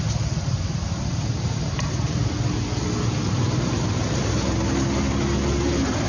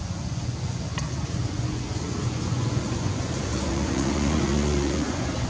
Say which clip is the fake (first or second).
second